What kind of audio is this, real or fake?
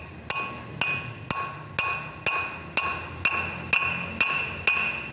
real